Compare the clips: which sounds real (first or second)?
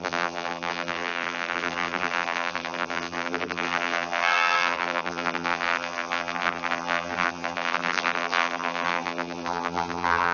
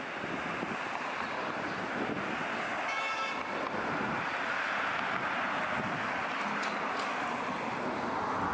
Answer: second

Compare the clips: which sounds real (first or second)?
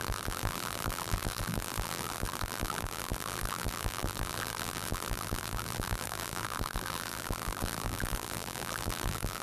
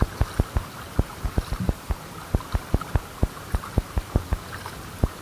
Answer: second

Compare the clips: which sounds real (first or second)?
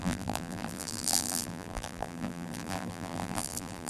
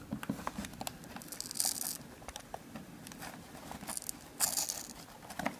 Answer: second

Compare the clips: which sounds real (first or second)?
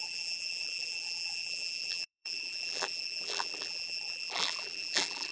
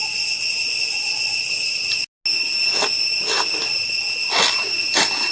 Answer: second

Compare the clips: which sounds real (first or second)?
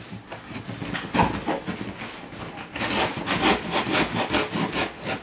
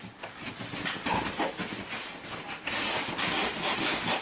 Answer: first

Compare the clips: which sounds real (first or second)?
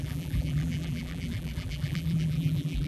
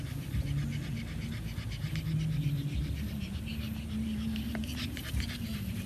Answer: second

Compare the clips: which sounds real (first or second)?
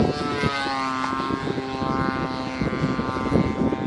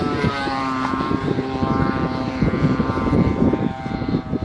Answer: first